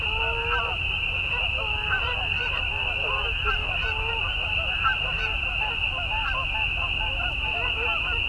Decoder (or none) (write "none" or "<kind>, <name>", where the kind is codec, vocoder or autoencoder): none